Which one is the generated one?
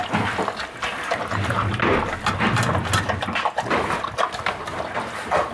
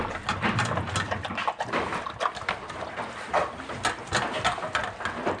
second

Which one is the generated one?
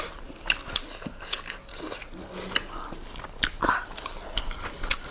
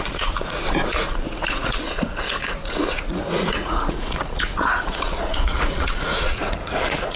second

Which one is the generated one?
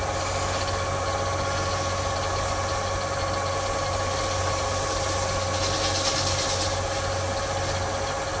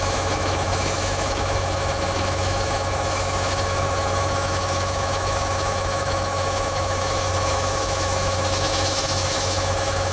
second